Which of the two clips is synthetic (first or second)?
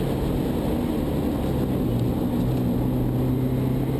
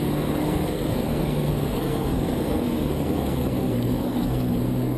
second